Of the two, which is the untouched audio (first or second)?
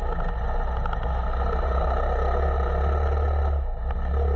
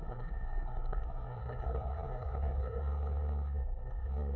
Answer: first